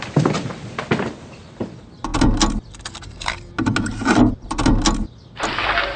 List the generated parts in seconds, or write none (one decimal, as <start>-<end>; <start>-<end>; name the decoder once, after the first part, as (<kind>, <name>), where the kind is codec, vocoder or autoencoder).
none